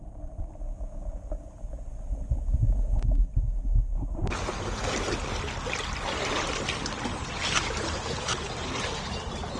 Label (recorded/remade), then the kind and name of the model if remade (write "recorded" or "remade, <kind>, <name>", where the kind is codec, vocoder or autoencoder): recorded